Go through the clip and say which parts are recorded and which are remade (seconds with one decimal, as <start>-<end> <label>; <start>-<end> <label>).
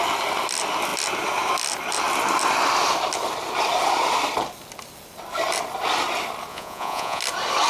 0.0-6.5 recorded; 6.5-7.2 remade; 7.2-7.7 recorded